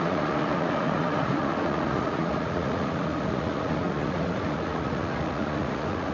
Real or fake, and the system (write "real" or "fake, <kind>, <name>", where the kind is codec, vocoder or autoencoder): fake, vocoder, Vocos